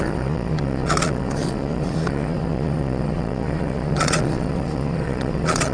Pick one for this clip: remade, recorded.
remade